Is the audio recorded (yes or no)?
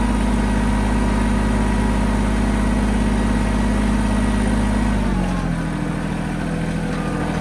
yes